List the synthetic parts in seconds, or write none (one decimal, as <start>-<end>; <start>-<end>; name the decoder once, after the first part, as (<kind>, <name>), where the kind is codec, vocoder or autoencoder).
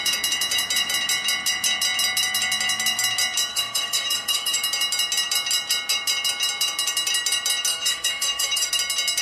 3.5-4.6 (autoencoder, DAC-VAE); 7.7-8.7